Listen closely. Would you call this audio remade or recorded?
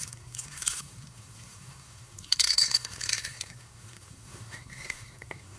remade